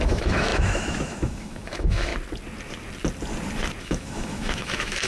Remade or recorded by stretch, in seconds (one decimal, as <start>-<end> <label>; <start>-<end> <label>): 0.0-2.1 remade; 2.1-3.8 recorded; 3.8-5.1 remade